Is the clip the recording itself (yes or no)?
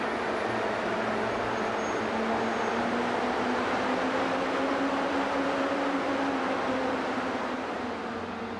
yes